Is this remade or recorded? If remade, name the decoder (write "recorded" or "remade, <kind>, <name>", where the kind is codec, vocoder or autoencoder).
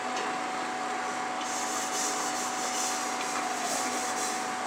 recorded